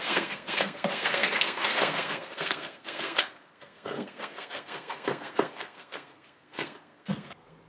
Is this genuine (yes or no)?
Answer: no